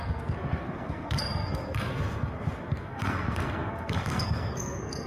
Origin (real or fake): fake